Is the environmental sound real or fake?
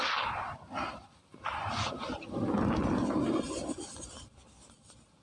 real